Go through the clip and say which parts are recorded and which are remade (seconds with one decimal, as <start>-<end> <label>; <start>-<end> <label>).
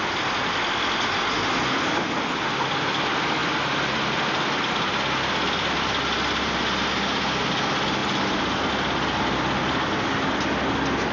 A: 0.0-11.1 recorded